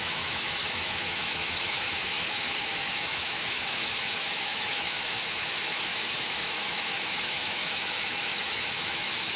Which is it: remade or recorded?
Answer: remade